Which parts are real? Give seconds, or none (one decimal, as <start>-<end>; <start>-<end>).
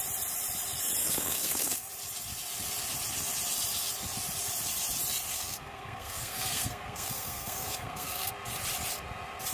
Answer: 0.0-1.0; 1.9-5.3; 8.3-9.5